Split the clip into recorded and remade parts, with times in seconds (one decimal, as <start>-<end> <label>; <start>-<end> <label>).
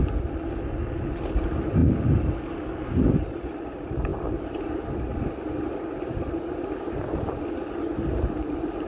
0.0-8.9 recorded